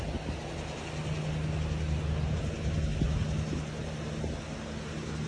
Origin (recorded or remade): recorded